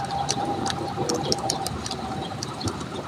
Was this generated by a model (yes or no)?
yes